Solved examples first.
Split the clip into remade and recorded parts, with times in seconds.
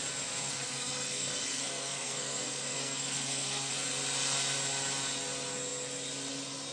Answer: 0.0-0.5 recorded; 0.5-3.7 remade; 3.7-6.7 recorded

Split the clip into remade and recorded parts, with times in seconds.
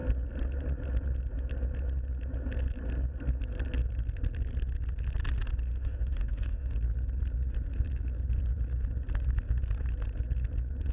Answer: 0.0-5.8 recorded; 5.8-6.7 remade; 6.7-10.9 recorded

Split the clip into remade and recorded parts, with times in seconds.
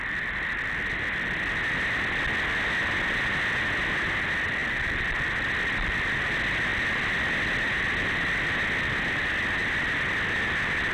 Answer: 0.0-10.9 recorded